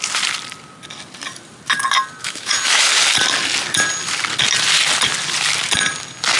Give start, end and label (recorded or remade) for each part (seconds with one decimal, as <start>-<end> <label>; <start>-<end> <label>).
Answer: 0.0-2.2 recorded; 2.2-2.8 remade; 2.8-6.4 recorded